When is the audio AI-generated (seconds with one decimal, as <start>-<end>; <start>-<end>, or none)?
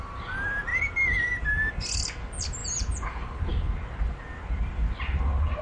2.6-3.5